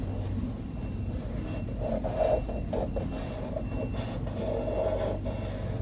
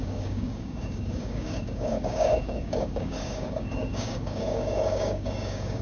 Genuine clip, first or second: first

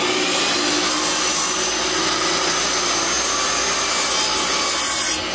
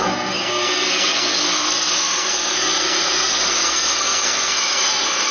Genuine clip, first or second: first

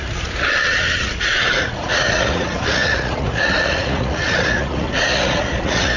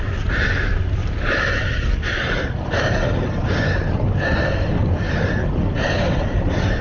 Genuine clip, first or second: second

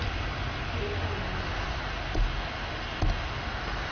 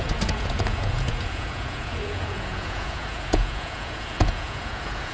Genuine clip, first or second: first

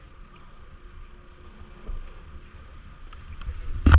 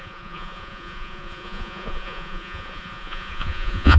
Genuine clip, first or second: first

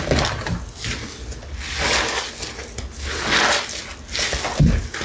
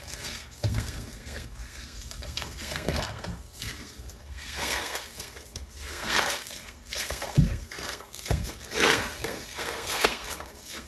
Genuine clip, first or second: first